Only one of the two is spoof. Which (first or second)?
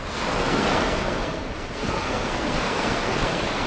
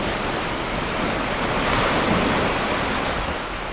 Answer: first